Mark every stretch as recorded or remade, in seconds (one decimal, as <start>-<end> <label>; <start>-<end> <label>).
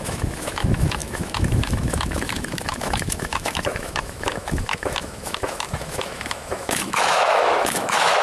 0.0-8.2 remade